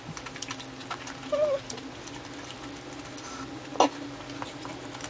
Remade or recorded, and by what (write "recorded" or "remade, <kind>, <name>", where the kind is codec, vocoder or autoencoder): recorded